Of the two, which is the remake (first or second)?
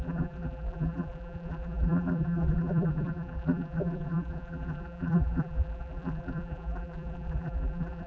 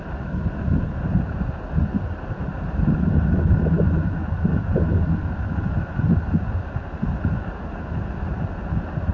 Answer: first